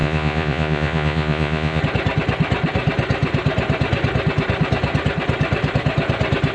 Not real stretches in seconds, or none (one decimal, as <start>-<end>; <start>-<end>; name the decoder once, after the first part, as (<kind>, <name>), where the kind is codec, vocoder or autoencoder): 0.0-1.8 (vocoder, Vocos)